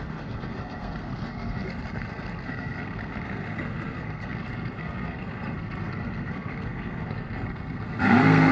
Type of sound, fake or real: fake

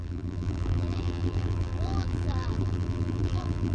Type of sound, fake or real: fake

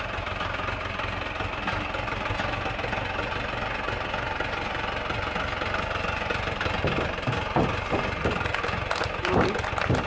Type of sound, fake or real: real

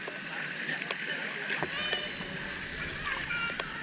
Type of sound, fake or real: real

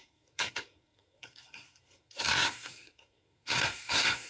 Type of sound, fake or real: fake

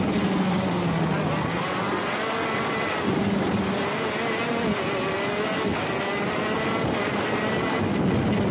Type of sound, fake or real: real